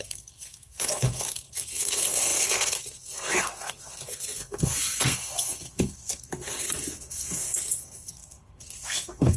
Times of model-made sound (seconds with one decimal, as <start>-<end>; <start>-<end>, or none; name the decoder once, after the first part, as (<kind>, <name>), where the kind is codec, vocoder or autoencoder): 0.0-9.4 (codec, SNAC)